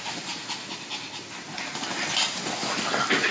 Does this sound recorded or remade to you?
recorded